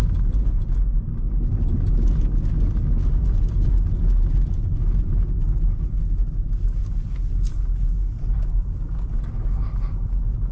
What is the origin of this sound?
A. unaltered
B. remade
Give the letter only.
A